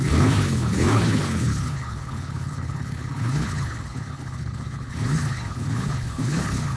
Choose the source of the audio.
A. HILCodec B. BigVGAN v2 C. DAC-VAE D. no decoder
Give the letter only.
A